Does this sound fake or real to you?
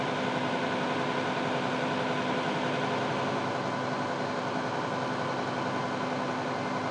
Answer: real